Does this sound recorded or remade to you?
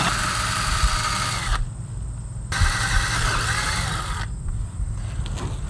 recorded